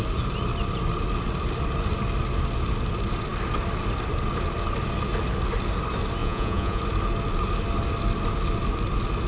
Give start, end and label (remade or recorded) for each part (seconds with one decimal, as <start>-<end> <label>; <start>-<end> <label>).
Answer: 0.0-6.2 recorded; 6.2-6.8 remade; 6.8-9.3 recorded